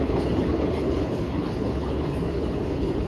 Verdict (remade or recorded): remade